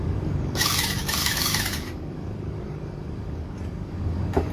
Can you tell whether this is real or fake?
fake